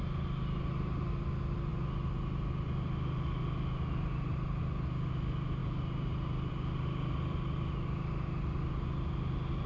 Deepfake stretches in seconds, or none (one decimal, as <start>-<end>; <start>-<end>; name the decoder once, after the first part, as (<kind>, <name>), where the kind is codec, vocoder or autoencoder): none